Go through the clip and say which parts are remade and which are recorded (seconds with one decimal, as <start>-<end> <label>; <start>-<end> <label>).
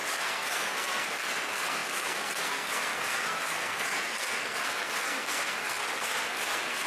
0.0-6.9 remade